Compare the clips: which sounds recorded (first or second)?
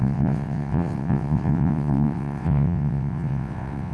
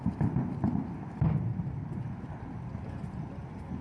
second